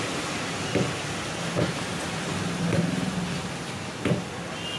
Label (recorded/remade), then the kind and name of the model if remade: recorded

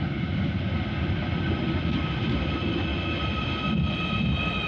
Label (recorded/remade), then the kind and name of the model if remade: recorded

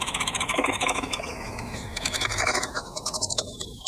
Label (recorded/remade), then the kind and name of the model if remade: remade, autoencoder, DAC-VAE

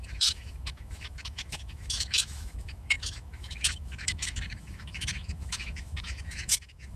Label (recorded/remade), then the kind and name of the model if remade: remade, autoencoder, DAC-VAE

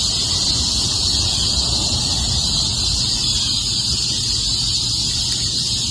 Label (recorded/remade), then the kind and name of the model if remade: recorded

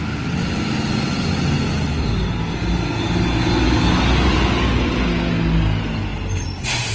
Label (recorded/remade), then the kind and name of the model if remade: recorded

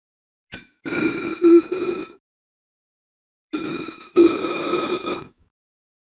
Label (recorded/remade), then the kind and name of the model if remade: remade, autoencoder, DAC-VAE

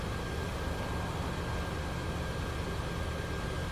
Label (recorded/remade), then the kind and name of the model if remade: recorded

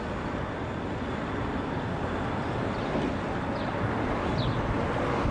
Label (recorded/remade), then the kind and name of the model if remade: recorded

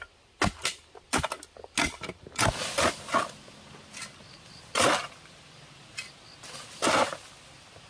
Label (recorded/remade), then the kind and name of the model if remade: recorded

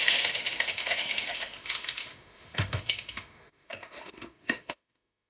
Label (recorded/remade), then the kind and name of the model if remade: remade, autoencoder, DAC-VAE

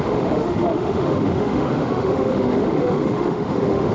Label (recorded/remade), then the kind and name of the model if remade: remade, autoencoder, DAC-VAE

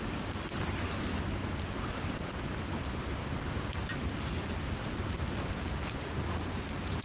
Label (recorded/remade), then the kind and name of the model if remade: recorded